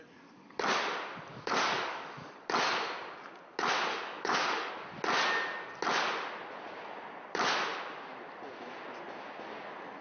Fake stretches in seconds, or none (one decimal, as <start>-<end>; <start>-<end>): 1.3-2.3; 3.9-4.7